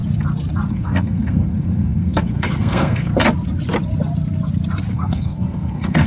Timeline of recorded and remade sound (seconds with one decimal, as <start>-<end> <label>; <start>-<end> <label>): 0.0-0.7 recorded; 0.7-3.1 remade; 3.1-4.9 recorded; 4.9-6.1 remade